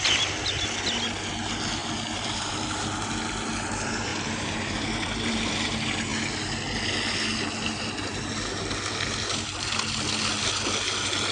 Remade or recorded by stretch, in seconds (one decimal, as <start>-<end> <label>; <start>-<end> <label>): 0.0-4.1 recorded; 4.1-5.5 remade; 5.5-11.3 recorded